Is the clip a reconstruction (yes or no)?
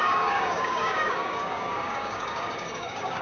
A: yes